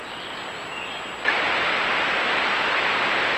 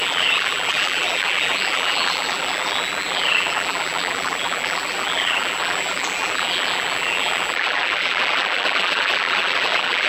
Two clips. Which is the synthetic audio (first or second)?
second